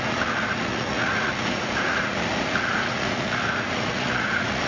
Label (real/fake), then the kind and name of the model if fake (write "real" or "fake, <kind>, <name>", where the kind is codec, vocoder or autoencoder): fake, vocoder, Vocos